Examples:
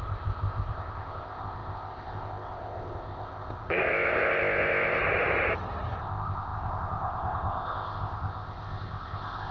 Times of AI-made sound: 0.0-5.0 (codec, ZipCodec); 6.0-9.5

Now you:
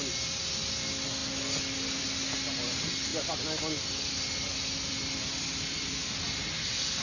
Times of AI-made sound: none

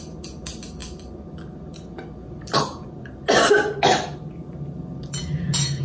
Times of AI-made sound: none

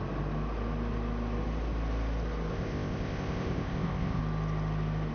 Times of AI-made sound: 2.5-4.2 (codec, ZipCodec)